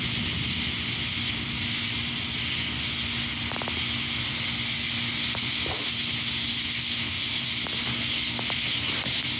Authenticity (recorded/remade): recorded